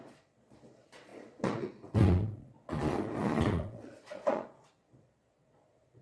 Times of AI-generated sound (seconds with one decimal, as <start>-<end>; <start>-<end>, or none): 0.0-6.0